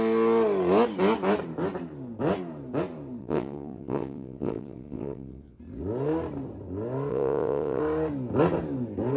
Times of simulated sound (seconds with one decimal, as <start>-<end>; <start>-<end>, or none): 3.2-5.6; 7.1-7.8